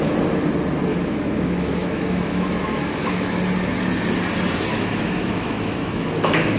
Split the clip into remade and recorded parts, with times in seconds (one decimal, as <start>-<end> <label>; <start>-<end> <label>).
0.0-0.9 recorded; 0.9-3.4 remade; 3.4-4.7 recorded; 4.7-6.6 remade